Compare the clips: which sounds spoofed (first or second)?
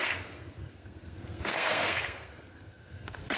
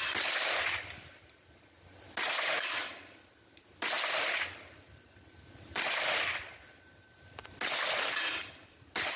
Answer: first